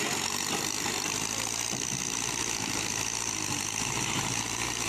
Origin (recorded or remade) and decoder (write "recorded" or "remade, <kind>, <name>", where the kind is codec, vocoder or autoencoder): recorded